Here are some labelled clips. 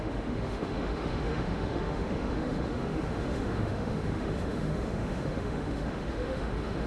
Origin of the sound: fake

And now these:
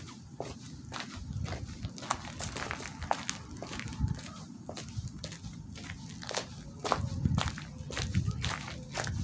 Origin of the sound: real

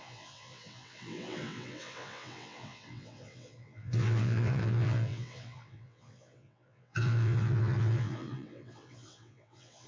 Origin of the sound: fake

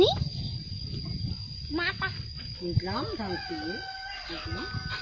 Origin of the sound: real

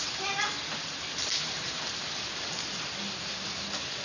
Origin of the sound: real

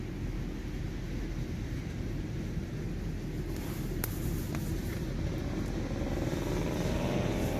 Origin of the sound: real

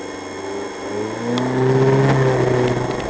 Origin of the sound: real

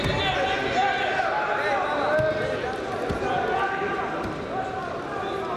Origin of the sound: real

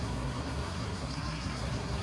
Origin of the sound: fake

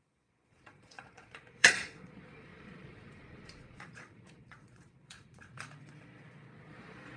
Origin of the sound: fake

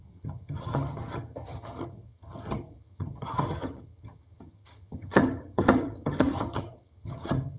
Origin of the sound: fake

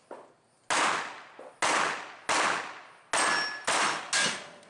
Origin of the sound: real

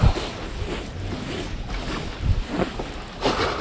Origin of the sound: real